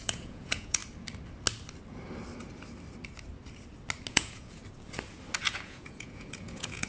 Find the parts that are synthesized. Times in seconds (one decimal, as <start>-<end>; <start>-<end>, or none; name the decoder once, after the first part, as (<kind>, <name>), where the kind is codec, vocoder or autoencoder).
0.0-0.8 (vocoder, Vocos); 4.1-4.6; 5.5-6.9